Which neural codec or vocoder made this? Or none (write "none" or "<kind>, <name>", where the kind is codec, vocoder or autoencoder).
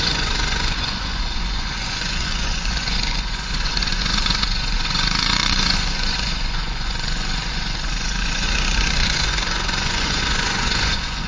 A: vocoder, Vocos